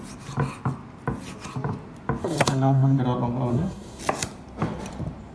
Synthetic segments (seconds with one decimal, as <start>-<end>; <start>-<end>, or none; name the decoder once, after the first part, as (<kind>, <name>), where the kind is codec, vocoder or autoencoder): 2.2-3.0 (codec, SNAC); 3.5-4.0